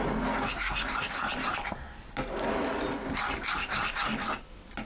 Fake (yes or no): no